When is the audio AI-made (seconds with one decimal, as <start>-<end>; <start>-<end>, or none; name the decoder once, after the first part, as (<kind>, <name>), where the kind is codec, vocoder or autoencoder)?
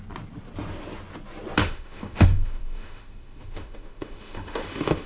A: 1.6-5.1 (autoencoder, DAC-VAE)